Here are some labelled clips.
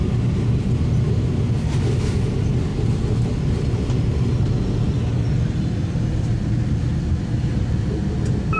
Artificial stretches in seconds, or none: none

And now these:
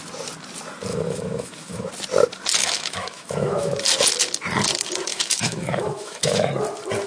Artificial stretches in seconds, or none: 0.9-1.9 (autoencoder, DAC-VAE); 2.6-3.8; 5.1-6.5

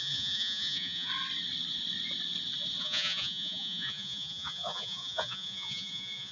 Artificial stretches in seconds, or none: 0.0-1.1 (vocoder, Vocos); 2.8-6.3